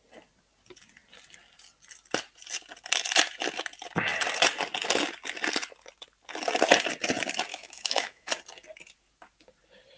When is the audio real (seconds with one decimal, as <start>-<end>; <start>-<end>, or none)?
0.0-7.5; 8.3-10.0